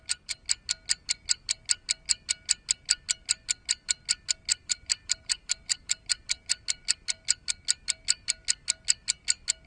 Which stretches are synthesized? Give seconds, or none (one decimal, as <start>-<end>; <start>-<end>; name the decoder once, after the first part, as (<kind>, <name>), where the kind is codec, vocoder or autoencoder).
4.5-6.6 (vocoder, BigVGAN v2)